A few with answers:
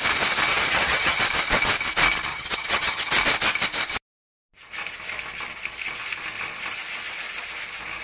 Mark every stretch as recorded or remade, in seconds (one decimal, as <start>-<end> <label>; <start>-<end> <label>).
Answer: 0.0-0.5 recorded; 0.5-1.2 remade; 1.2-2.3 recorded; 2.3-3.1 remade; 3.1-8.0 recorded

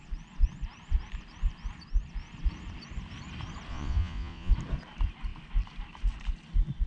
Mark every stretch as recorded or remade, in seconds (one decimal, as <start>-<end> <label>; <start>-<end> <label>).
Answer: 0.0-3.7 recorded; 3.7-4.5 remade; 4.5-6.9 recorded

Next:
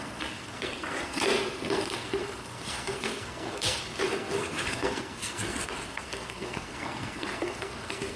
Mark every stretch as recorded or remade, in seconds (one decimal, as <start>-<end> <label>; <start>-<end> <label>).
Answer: 0.0-8.2 remade

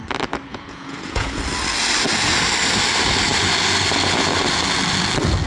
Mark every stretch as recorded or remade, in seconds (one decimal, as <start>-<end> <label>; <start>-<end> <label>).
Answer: 0.0-0.5 recorded; 0.5-1.4 remade; 1.4-5.5 recorded

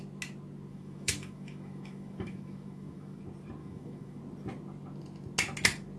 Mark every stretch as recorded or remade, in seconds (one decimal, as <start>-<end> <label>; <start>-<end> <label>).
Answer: 0.0-0.7 recorded; 0.7-3.2 remade; 3.2-3.6 recorded; 3.6-4.2 remade; 4.2-6.0 recorded

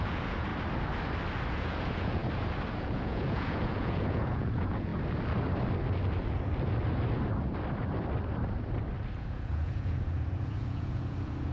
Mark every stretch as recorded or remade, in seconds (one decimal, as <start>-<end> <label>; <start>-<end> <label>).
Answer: 0.0-0.5 remade; 0.5-1.5 recorded; 1.5-2.2 remade; 2.2-2.7 recorded; 2.7-4.9 remade; 4.9-9.2 recorded; 9.2-11.5 remade

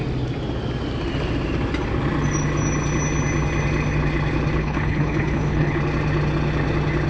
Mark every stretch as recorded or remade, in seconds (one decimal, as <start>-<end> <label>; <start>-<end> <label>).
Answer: 0.0-4.6 recorded; 4.6-5.8 remade; 5.8-7.1 recorded

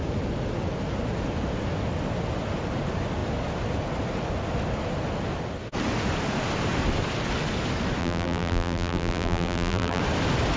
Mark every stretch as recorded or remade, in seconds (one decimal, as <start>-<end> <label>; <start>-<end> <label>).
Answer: 0.0-8.0 recorded; 8.0-10.0 remade; 10.0-10.6 recorded